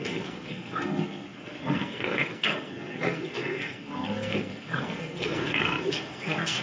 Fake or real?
fake